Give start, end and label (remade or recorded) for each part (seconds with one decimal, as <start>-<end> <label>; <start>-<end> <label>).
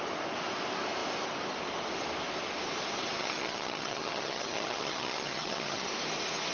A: 0.0-3.2 recorded; 3.2-5.9 remade; 5.9-6.5 recorded